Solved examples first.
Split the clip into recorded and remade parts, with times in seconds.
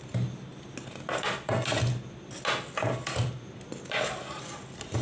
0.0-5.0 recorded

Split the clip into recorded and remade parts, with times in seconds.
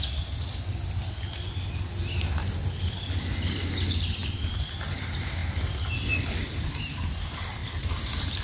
0.0-4.2 recorded; 4.2-5.0 remade; 5.0-5.4 recorded; 5.4-6.4 remade; 6.4-7.6 recorded; 7.6-8.4 remade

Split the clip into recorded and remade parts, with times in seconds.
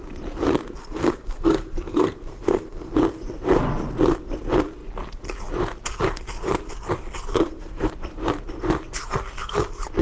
0.0-0.8 recorded; 0.8-2.9 remade; 2.9-7.3 recorded; 7.3-7.9 remade; 7.9-10.0 recorded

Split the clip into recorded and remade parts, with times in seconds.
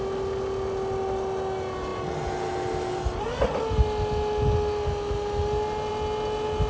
0.0-6.7 recorded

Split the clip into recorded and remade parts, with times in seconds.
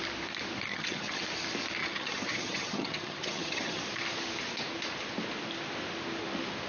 0.0-0.7 recorded; 0.7-1.2 remade; 1.2-1.8 recorded; 1.8-3.8 remade; 3.8-6.7 recorded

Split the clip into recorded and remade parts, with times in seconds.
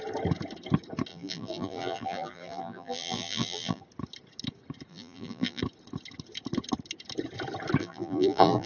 0.0-1.1 recorded; 1.1-3.8 remade; 3.8-4.9 recorded; 4.9-5.6 remade; 5.6-7.8 recorded; 7.8-8.7 remade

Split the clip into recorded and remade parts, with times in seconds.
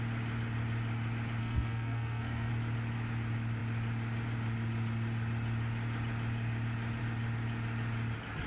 0.0-1.4 recorded; 1.4-2.5 remade; 2.5-8.5 recorded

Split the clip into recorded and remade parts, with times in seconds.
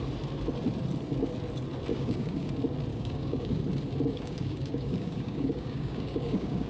0.0-1.9 recorded; 1.9-2.5 remade; 2.5-2.9 recorded; 2.9-3.6 remade; 3.6-4.1 recorded; 4.1-6.7 remade